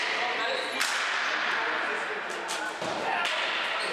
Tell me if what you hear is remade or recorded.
recorded